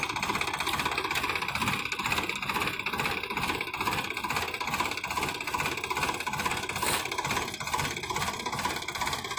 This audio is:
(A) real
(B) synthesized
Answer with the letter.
A